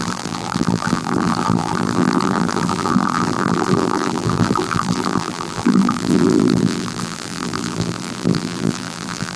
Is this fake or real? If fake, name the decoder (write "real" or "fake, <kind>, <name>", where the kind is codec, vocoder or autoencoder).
fake, vocoder, BigVGAN v2